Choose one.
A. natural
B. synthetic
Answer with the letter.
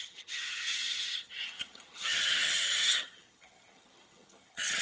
B